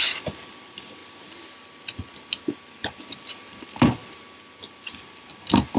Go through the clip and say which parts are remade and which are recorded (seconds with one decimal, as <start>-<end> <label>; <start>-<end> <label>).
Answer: 0.0-1.0 remade; 1.0-3.1 recorded; 3.1-5.8 remade